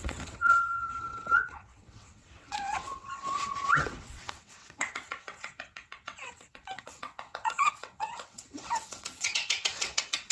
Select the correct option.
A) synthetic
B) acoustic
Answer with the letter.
A